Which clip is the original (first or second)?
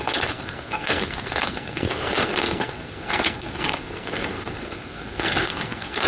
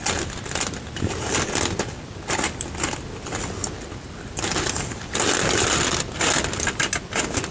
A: second